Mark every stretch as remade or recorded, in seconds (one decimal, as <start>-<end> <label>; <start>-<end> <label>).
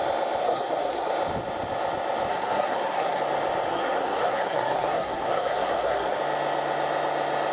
0.0-0.4 recorded; 0.4-1.1 remade; 1.1-2.3 recorded; 2.3-3.2 remade; 3.2-3.7 recorded; 3.7-6.2 remade; 6.2-7.5 recorded